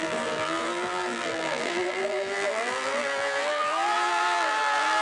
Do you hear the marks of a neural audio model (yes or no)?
yes